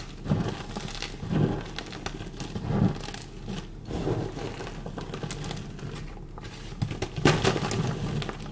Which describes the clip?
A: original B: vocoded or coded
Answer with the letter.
A